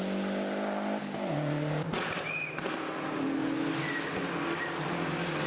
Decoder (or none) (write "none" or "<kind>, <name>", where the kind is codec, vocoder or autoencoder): none